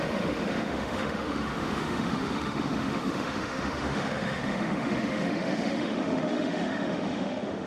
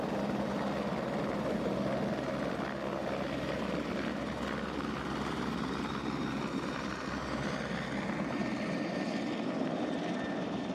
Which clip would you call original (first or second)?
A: second